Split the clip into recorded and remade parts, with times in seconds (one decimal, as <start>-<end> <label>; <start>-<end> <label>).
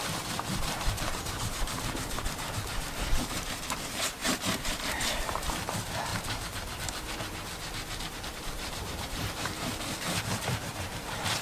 0.0-6.1 remade; 6.1-8.4 recorded; 8.4-11.4 remade